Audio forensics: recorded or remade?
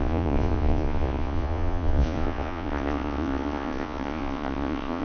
remade